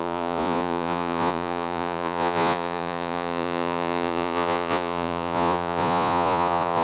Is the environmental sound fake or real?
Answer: fake